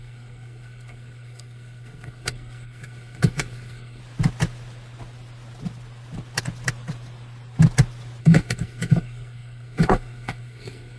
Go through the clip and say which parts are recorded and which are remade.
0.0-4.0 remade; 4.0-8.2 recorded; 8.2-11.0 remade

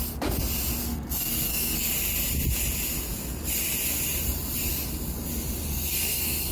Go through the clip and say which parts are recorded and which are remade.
0.0-0.8 recorded; 0.8-1.9 remade; 1.9-5.7 recorded; 5.7-6.5 remade